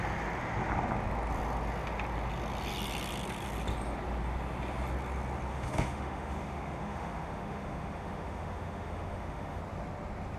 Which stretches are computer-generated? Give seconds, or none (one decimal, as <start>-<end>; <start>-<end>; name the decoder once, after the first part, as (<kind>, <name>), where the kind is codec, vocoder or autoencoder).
5.5-9.6 (autoencoder, DAC-VAE)